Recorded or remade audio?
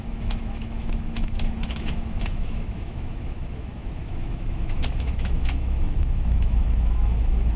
remade